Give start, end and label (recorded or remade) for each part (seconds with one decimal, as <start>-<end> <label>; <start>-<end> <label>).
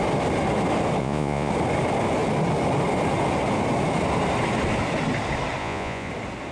0.0-1.0 recorded; 1.0-1.5 remade; 1.5-5.6 recorded; 5.6-6.1 remade; 6.1-6.5 recorded